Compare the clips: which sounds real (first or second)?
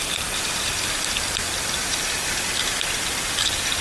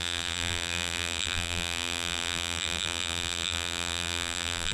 first